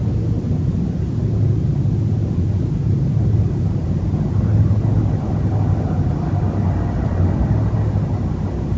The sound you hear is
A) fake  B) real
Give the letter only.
B